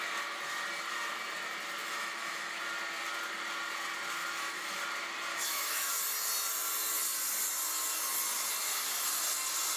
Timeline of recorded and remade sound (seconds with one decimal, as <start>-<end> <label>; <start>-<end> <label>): 0.0-1.8 recorded; 1.8-2.6 remade; 2.6-4.2 recorded; 4.2-4.8 remade; 4.8-5.3 recorded; 5.3-5.9 remade; 5.9-9.8 recorded